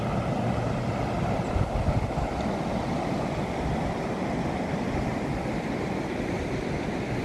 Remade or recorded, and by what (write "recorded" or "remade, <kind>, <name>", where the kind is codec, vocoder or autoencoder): recorded